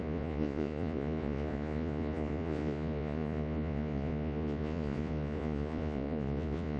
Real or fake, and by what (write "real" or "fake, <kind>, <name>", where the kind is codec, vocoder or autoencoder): fake, vocoder, Vocos